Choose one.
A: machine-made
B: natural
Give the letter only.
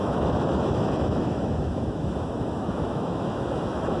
A